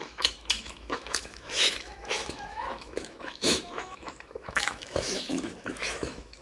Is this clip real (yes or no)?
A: no